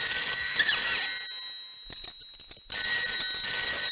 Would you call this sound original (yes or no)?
yes